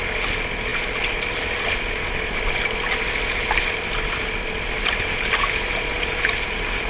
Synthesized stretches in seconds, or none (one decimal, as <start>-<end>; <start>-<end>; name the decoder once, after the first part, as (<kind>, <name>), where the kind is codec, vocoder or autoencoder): none